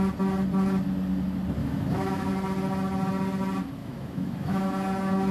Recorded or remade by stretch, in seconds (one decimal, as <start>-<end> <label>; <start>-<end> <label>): 0.0-1.6 recorded; 1.6-2.3 remade; 2.3-3.8 recorded; 3.8-4.7 remade; 4.7-5.3 recorded